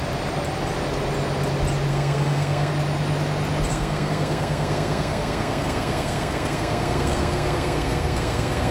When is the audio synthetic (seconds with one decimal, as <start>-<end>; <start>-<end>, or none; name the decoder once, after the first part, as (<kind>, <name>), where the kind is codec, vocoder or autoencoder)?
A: 1.9-2.7 (codec, SNAC); 3.7-8.7